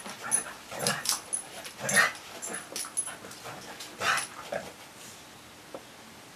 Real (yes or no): yes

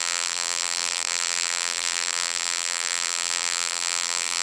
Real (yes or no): no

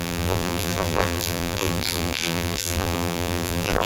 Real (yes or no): no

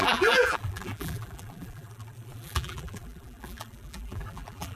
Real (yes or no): no